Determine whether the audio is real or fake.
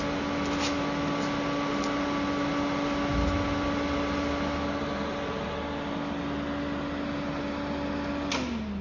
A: real